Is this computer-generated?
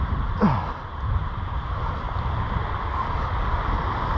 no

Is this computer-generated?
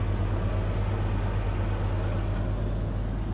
no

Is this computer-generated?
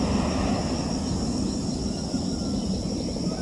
no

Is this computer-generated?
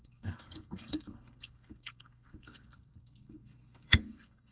yes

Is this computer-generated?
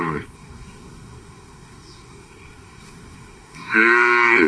yes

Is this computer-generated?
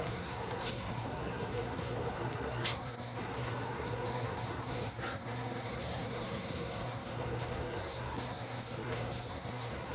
yes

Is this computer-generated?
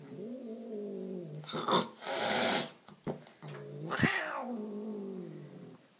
no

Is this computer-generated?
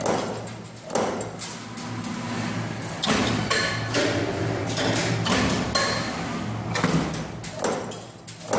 no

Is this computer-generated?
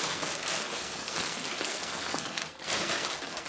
yes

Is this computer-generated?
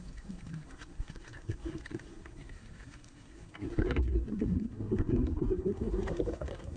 yes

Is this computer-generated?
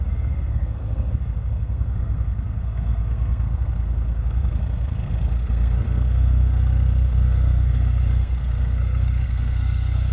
yes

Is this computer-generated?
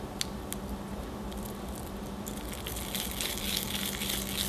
no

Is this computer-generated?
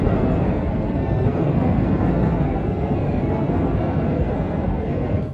yes